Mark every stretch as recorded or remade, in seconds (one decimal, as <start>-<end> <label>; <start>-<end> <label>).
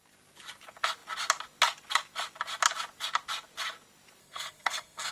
0.0-4.2 recorded; 4.2-5.1 remade